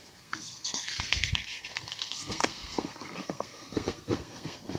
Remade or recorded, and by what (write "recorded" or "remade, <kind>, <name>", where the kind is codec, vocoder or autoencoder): remade, codec, SNAC